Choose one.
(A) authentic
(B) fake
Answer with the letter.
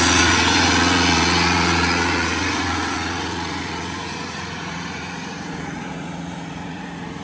B